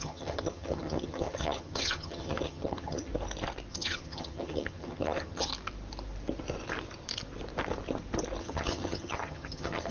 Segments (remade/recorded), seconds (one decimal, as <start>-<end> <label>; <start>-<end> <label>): 0.0-3.1 remade; 3.1-3.7 recorded; 3.7-5.5 remade; 5.5-8.4 recorded; 8.4-9.9 remade